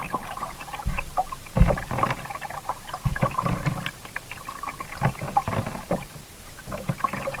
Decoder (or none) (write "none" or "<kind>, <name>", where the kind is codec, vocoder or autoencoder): none